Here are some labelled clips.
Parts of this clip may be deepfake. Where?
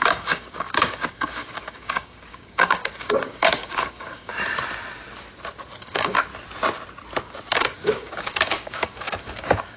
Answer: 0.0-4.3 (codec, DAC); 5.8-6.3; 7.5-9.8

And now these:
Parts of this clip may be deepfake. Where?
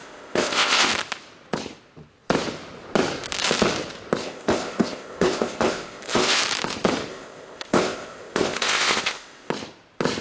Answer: 0.0-0.9 (codec, ZipCodec); 4.2-6.4; 7.1-9.5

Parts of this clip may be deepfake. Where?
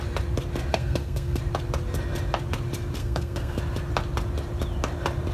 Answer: 0.7-1.4 (codec, SNAC); 3.0-3.6